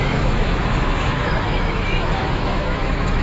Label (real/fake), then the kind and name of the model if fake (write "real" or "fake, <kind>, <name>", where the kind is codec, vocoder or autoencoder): fake, autoencoder, DAC-VAE